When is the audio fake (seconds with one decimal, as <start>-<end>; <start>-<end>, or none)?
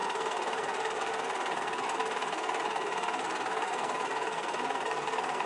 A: 0.0-5.5